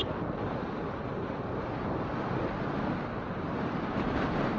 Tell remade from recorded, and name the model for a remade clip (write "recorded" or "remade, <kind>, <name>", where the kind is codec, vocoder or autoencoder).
recorded